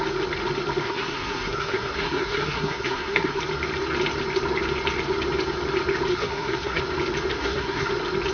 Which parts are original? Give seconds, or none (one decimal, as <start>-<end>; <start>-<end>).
0.0-0.8; 3.4-6.1; 6.8-7.4; 7.9-8.3